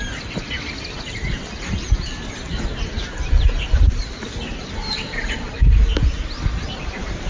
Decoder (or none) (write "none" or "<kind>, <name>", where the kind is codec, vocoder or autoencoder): none